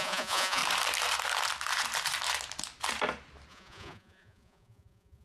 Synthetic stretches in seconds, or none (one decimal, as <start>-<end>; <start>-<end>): 0.0-0.6; 3.5-5.2